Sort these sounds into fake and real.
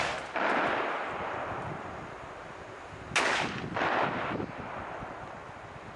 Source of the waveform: real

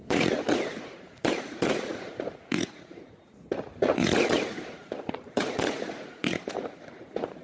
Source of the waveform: fake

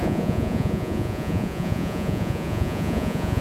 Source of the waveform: fake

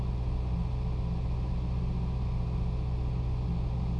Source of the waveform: real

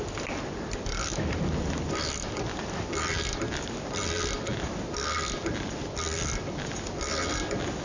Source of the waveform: real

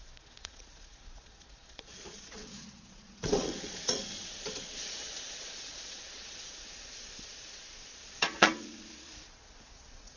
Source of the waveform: fake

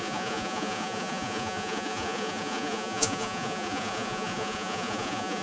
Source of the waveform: fake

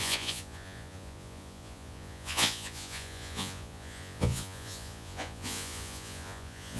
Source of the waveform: fake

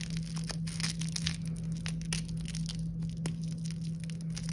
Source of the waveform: real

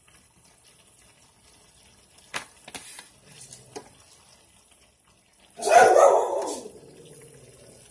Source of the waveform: real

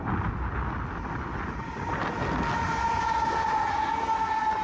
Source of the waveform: real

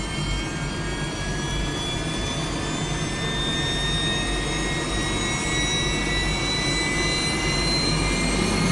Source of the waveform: real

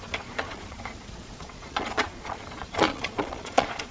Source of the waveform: fake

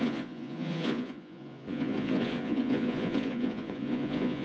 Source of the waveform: fake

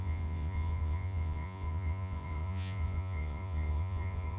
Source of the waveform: fake